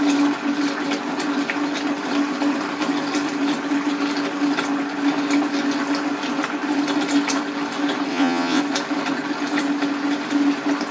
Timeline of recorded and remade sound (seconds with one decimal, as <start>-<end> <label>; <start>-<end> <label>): 0.0-8.1 recorded; 8.1-8.6 remade; 8.6-10.9 recorded

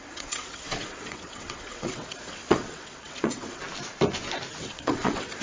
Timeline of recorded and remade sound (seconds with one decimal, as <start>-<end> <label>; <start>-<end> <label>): 0.0-3.6 remade; 3.6-4.6 recorded; 4.6-5.4 remade